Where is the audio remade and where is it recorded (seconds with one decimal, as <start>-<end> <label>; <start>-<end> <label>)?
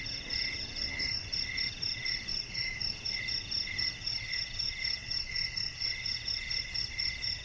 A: 0.0-7.4 recorded